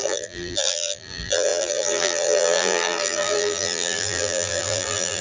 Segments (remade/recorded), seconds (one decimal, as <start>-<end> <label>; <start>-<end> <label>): 0.0-5.2 remade